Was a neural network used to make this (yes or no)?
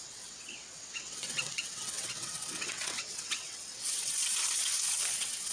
yes